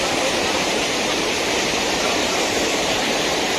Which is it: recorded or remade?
remade